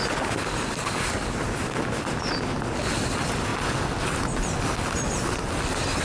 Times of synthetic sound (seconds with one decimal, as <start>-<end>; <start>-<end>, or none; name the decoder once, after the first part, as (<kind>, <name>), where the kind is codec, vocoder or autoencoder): none